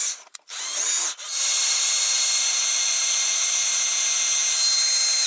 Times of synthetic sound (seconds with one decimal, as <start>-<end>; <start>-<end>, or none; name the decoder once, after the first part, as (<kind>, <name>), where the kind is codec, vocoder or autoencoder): 1.3-3.7 (vocoder, BigVGAN v2)